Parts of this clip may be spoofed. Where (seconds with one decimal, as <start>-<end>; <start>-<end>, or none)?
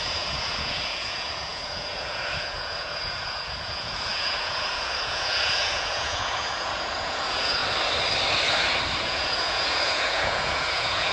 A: 0.0-7.6; 9.0-11.1